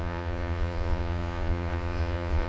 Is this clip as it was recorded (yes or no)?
no